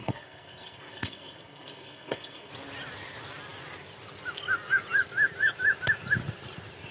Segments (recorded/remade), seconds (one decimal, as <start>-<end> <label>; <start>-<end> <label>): 0.0-2.5 remade; 2.5-6.9 recorded